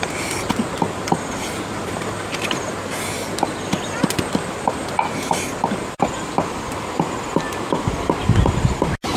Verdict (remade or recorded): recorded